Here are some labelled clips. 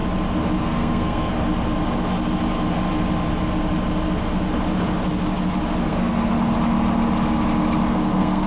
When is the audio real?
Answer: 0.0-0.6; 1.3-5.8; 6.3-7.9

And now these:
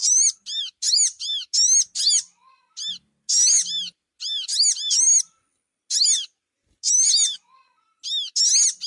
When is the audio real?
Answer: 0.0-8.9

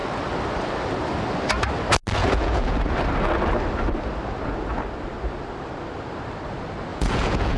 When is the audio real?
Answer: 0.0-2.2; 2.8-6.9

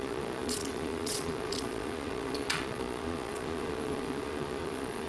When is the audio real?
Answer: none